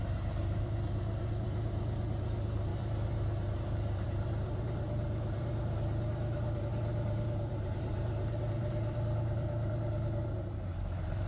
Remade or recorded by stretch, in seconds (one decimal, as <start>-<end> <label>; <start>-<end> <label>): 0.0-11.3 remade